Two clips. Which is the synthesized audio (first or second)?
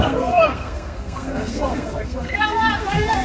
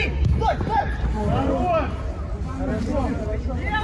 first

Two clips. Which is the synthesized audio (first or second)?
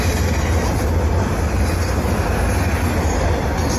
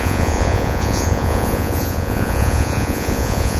second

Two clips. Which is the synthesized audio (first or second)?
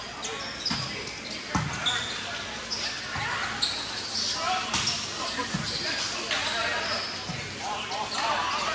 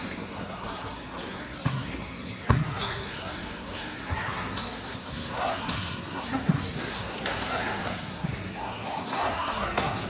second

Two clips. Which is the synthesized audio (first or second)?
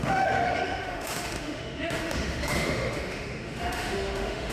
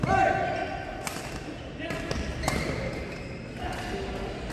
first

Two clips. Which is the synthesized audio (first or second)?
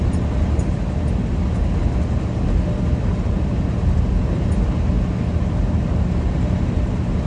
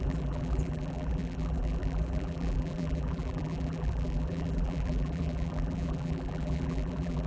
second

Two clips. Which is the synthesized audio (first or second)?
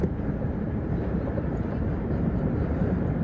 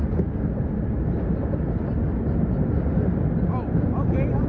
first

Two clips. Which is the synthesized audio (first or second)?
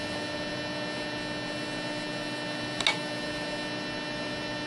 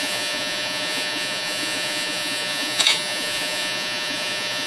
second